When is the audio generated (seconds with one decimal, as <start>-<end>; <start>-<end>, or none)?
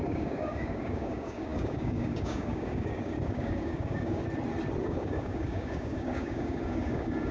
0.0-4.2; 4.8-7.3